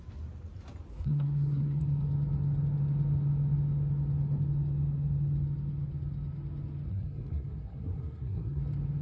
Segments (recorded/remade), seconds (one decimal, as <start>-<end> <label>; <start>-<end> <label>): 0.0-0.9 recorded; 0.9-1.8 remade; 1.8-6.9 recorded; 6.9-8.6 remade; 8.6-9.0 recorded